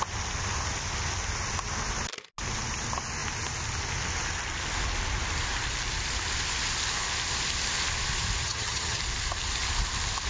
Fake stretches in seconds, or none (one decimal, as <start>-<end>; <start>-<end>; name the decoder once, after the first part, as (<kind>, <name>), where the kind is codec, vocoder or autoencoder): 8.4-9.0 (vocoder, HiFi-GAN)